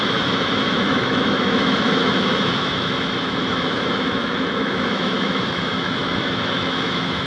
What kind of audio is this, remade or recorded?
remade